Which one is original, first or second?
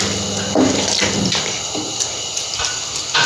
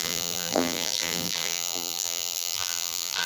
first